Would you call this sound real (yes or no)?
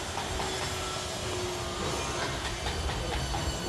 yes